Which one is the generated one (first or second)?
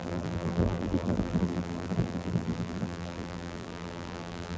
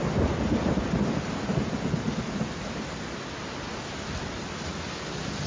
first